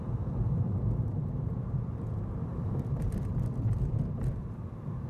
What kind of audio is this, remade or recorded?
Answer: remade